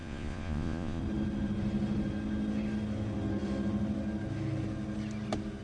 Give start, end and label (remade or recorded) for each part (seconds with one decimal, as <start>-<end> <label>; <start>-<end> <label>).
0.0-1.0 remade; 1.0-5.6 recorded